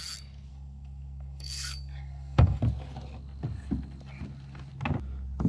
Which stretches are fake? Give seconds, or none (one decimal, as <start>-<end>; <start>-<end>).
0.5-2.6